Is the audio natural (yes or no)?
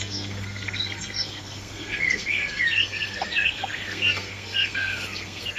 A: no